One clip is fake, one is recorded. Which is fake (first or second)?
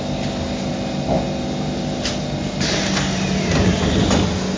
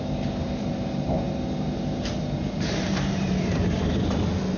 second